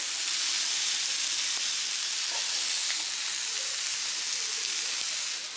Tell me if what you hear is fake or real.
real